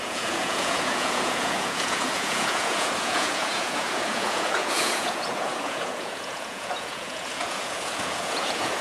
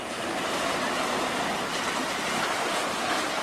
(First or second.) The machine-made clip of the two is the first